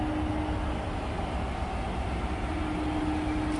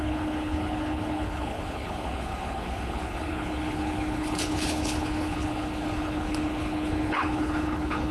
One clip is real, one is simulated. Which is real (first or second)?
first